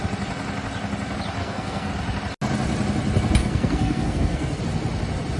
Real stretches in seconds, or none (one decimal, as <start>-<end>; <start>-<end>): 0.0-1.4; 1.9-3.4; 4.6-5.4